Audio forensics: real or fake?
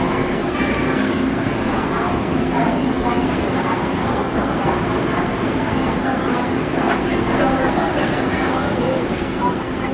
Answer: fake